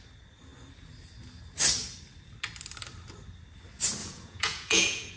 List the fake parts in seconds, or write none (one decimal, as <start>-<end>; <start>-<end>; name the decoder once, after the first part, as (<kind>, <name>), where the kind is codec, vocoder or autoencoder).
4.0-5.2 (vocoder, Vocos)